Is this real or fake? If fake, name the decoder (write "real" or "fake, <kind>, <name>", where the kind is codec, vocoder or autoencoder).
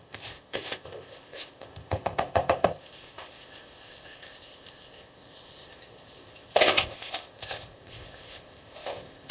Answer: fake, codec, ZipCodec